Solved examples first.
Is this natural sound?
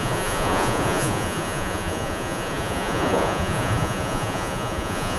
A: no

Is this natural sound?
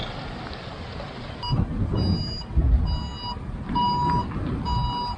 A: yes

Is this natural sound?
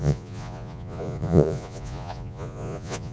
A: no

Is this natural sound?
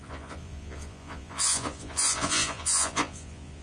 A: no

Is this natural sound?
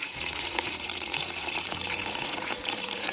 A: no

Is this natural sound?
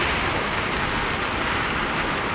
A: yes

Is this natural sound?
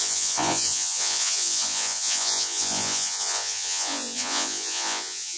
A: no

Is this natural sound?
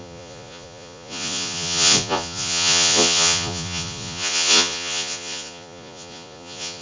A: no